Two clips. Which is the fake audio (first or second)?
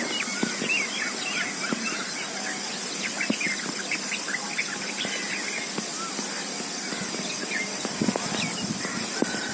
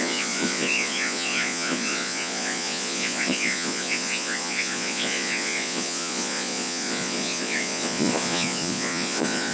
second